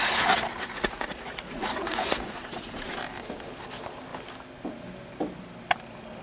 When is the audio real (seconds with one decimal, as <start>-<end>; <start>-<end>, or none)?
0.0-0.5; 3.0-6.2